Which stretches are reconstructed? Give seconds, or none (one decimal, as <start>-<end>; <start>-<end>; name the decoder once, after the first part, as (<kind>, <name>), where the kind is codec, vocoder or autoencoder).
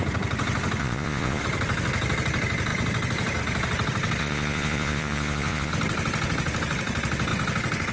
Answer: 0.8-1.4 (vocoder, Vocos); 4.2-5.7